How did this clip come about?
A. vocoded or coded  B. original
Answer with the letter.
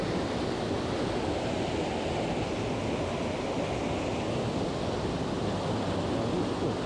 B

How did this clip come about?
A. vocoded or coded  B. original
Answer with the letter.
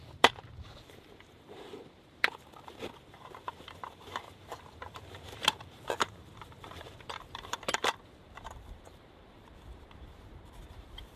A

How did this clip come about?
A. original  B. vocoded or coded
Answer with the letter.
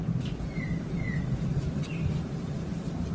A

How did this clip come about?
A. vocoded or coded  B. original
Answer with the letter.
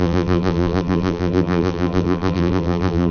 A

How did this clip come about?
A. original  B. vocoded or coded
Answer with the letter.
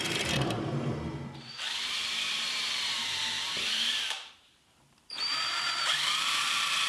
B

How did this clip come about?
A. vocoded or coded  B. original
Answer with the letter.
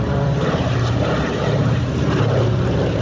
A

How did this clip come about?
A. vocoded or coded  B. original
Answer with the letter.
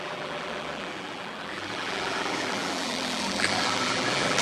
A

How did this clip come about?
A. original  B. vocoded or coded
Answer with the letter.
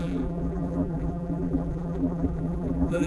B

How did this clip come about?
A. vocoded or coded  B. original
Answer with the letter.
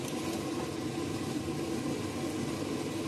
B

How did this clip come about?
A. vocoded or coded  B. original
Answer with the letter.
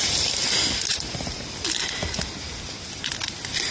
B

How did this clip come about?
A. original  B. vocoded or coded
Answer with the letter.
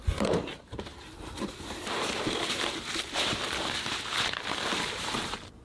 B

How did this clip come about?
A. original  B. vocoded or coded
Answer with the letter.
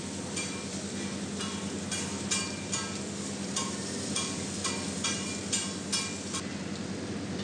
A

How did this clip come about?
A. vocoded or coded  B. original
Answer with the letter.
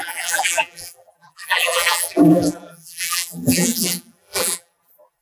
A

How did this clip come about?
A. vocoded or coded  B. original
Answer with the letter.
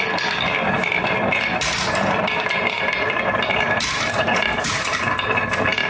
A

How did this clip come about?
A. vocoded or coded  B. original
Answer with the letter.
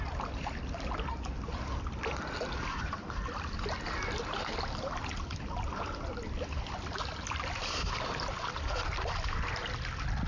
B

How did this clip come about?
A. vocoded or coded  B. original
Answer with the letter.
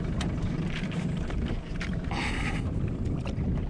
B